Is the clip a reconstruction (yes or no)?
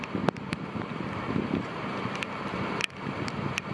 no